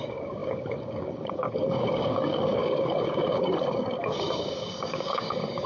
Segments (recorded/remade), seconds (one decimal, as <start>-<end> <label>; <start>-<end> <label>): 0.0-5.7 remade